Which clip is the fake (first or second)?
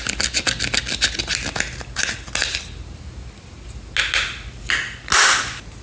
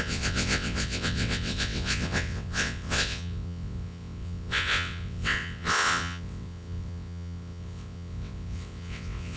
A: second